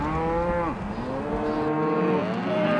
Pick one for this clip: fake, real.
real